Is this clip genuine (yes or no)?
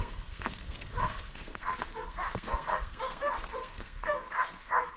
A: no